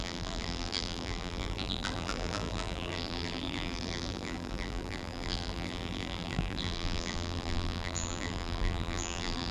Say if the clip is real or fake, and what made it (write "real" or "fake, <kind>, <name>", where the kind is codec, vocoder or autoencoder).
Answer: fake, vocoder, BigVGAN v2